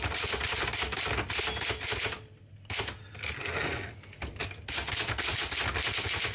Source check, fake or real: real